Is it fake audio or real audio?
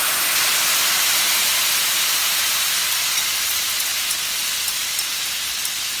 real